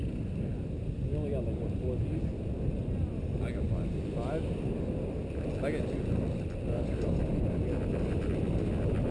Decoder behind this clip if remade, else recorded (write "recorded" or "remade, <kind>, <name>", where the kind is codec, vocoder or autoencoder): recorded